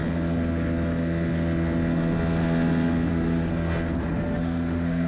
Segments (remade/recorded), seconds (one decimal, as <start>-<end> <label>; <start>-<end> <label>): 0.0-3.1 recorded; 3.1-3.5 remade; 3.5-4.0 recorded; 4.0-5.1 remade